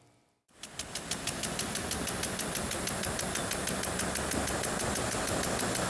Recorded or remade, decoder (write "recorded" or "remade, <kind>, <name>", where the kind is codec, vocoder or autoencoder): recorded